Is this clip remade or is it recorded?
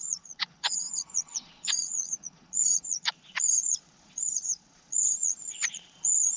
remade